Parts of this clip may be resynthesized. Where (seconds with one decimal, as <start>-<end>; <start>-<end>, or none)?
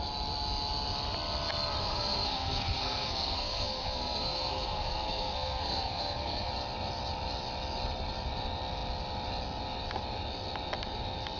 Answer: 1.8-6.5